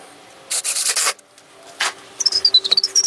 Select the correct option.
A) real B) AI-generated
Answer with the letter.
A